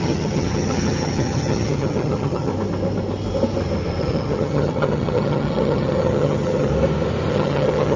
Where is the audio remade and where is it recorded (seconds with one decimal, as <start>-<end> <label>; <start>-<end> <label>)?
0.0-2.5 remade; 2.5-4.0 recorded; 4.0-6.7 remade; 6.7-7.3 recorded; 7.3-8.0 remade